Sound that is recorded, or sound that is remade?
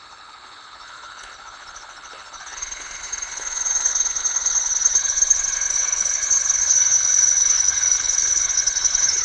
remade